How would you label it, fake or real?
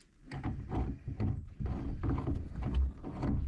real